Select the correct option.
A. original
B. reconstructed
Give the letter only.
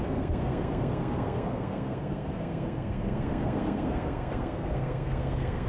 B